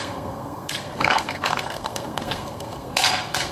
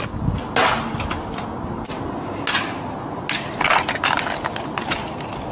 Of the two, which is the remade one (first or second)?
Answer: first